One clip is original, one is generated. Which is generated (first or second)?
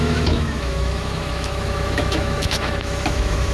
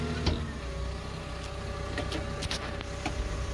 first